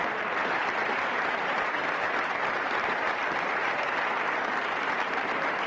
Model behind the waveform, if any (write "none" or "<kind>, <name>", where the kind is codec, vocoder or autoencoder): none